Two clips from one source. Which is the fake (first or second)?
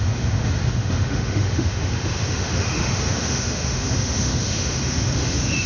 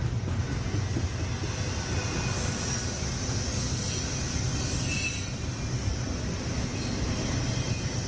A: first